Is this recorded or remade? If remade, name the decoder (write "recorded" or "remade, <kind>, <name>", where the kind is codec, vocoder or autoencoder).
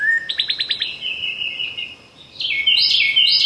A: recorded